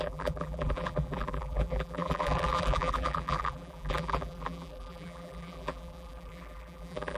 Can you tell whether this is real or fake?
fake